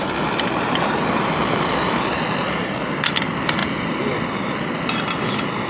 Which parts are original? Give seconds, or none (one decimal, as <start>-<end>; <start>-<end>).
0.0-5.7